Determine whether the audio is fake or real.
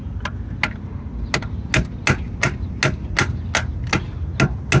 real